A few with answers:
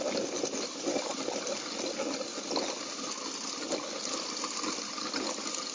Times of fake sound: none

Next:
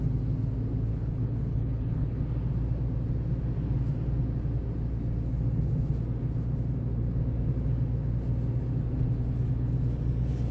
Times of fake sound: 0.9-2.2 (codec, HILCodec)

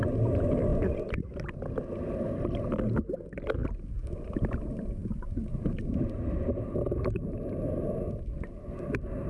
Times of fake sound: 0.7-1.6 (vocoder, BigVGAN v2); 5.0-8.0

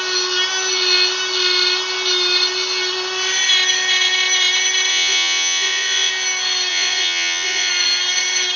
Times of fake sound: 4.9-6.1 (vocoder, Vocos); 6.7-7.7

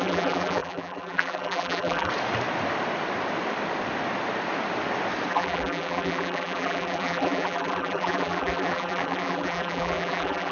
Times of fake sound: 0.0-2.1 (vocoder, BigVGAN v2); 5.3-10.5

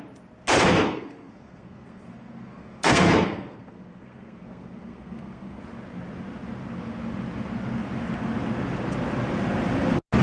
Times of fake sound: 0.7-5.6 (codec, SNAC)

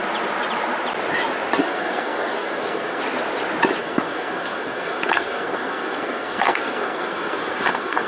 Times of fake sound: 1.6-3.0 (codec, SNAC); 3.8-8.1

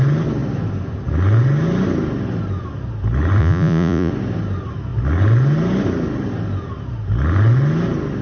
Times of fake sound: 3.4-4.1 (vocoder, Vocos)